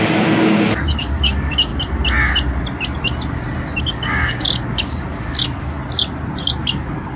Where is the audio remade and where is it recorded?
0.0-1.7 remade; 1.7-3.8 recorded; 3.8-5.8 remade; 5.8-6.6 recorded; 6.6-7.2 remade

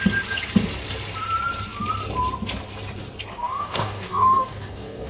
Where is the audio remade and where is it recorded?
0.0-3.4 recorded; 3.4-5.1 remade

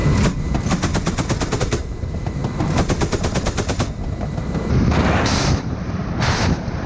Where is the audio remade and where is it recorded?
0.0-1.6 recorded; 1.6-2.4 remade; 2.4-5.6 recorded; 5.6-6.0 remade; 6.0-6.9 recorded

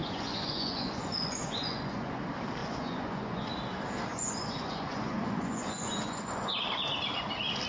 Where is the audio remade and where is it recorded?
0.0-2.2 remade; 2.2-2.6 recorded; 2.6-3.5 remade; 3.5-4.1 recorded; 4.1-6.6 remade; 6.6-7.7 recorded

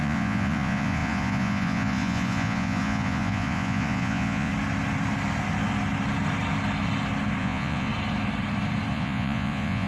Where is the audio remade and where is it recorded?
0.0-4.5 remade; 4.5-7.4 recorded; 7.4-7.9 remade; 7.9-8.9 recorded; 8.9-9.9 remade

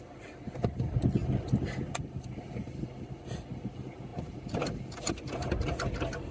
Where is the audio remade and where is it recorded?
0.0-6.3 recorded